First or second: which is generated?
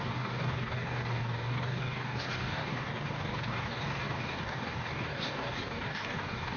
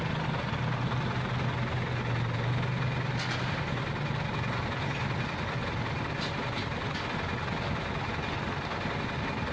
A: first